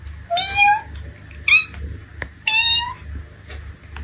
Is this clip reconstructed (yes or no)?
no